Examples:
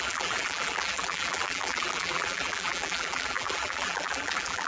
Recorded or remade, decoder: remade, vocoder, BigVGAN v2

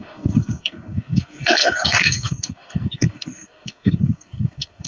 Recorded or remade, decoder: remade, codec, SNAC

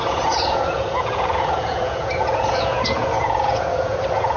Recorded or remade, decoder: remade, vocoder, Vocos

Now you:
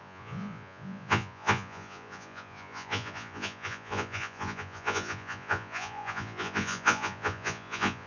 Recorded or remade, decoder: remade, vocoder, Vocos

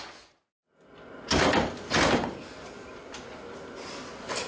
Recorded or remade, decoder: recorded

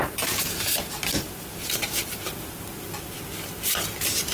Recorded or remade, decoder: recorded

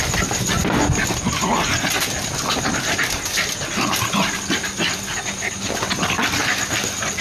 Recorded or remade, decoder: recorded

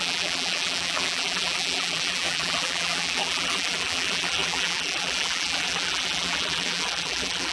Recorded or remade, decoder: remade, vocoder, BigVGAN v2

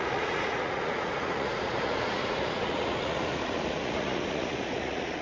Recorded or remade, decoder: remade, vocoder, Vocos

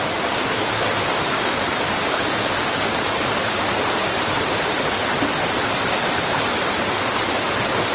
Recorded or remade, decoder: recorded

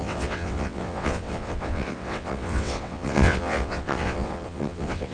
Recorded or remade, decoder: remade, vocoder, WaveNeXt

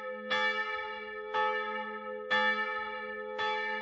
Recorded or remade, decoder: recorded